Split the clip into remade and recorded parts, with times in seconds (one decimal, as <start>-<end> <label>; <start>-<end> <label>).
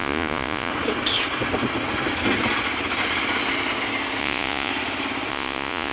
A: 0.0-0.7 remade; 0.7-4.2 recorded; 4.2-4.7 remade; 4.7-5.3 recorded; 5.3-5.9 remade